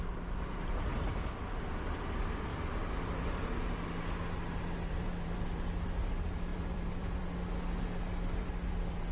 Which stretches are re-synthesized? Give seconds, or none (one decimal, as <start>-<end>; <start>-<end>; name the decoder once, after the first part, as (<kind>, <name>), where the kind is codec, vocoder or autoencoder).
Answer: 0.9-1.5 (vocoder, BigVGAN v2); 2.5-3.4; 6.5-7.5